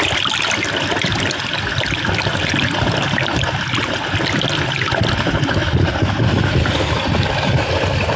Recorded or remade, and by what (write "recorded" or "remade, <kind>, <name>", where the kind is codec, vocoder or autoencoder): recorded